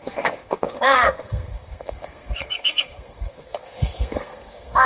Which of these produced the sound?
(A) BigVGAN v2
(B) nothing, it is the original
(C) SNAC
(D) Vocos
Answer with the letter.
C